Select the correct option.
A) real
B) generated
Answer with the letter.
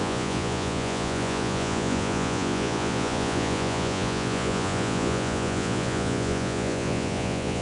B